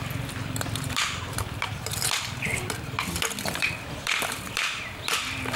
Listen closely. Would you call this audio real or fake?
fake